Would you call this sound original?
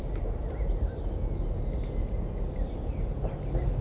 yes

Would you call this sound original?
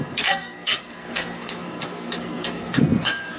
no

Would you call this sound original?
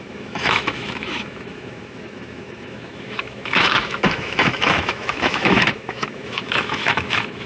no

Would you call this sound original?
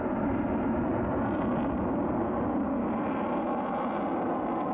yes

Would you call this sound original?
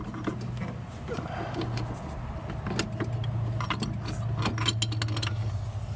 yes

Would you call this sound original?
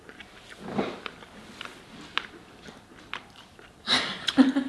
yes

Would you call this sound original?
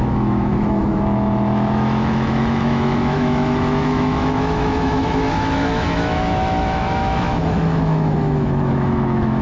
no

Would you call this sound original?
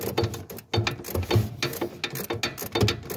yes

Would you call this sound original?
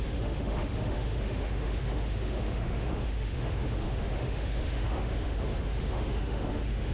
no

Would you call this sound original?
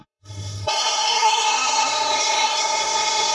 no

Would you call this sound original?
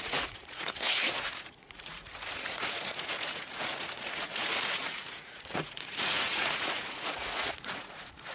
no